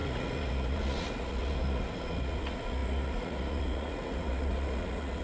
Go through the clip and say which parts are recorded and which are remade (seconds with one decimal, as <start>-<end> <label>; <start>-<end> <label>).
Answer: 0.0-5.2 remade